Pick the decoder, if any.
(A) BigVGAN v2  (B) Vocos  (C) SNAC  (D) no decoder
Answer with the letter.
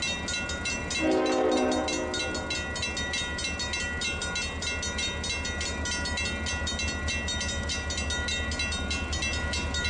D